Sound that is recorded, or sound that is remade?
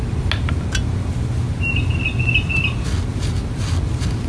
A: recorded